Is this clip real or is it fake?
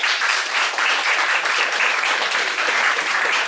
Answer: fake